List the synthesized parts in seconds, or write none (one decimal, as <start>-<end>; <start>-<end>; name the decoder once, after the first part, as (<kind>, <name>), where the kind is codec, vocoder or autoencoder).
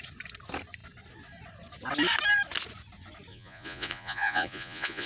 3.3-5.1 (vocoder, Vocos)